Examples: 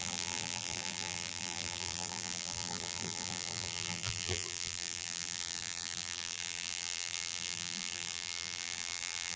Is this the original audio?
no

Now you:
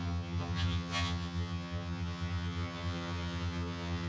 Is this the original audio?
no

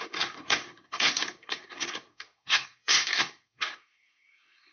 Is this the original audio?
no